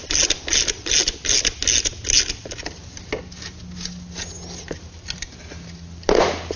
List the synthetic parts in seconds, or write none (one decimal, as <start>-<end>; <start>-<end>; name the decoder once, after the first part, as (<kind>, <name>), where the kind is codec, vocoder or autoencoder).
none